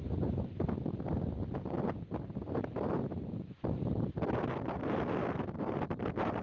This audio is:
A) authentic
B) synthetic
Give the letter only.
A